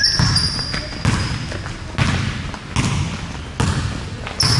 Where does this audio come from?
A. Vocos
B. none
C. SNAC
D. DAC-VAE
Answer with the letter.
B